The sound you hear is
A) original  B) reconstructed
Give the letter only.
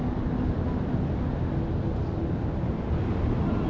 A